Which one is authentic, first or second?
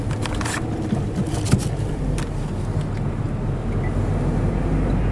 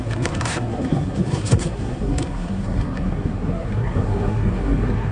first